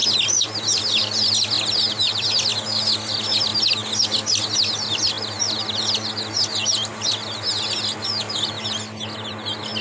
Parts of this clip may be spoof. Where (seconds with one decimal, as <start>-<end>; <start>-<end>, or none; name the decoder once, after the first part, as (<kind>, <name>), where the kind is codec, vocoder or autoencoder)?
none